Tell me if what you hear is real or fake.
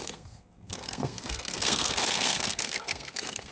fake